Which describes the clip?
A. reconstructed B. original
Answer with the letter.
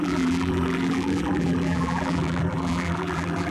A